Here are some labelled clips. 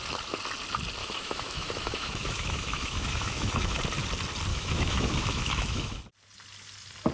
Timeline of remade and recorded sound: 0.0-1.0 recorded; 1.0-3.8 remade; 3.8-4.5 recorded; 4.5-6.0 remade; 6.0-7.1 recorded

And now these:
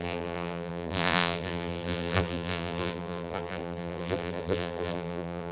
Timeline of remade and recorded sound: 0.0-5.5 remade

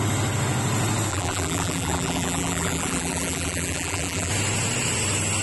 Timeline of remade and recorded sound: 0.0-1.1 recorded; 1.1-4.3 remade; 4.3-5.4 recorded

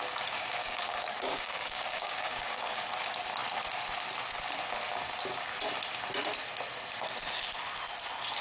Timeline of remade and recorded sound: 0.0-0.6 recorded; 0.6-2.8 remade; 2.8-8.4 recorded

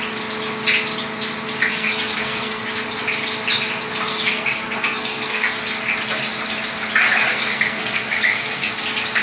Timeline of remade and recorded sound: 0.0-1.7 recorded; 1.7-2.6 remade; 2.6-4.1 recorded; 4.1-5.6 remade; 5.6-7.3 recorded; 7.3-8.7 remade; 8.7-9.2 recorded

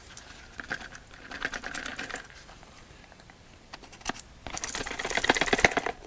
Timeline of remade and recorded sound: 0.0-1.9 recorded; 1.9-3.4 remade; 3.4-6.1 recorded

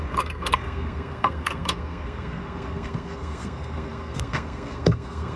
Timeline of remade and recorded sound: 0.0-5.4 remade

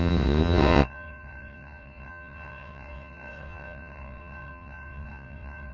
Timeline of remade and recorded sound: 0.0-5.7 remade